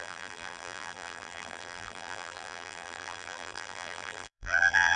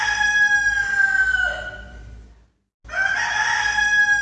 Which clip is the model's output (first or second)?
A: first